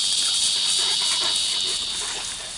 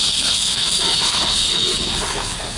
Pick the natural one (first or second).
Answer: first